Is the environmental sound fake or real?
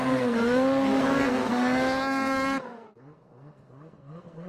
fake